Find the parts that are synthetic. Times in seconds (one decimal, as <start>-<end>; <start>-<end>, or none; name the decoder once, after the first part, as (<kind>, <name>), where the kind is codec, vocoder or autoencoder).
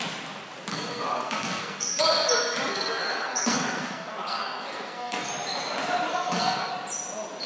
0.7-2.0 (codec, SNAC); 2.7-5.3; 6.1-6.7